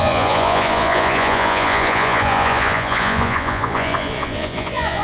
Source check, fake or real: fake